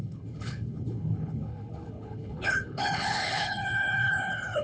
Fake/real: fake